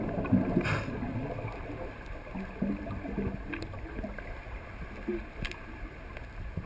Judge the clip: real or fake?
real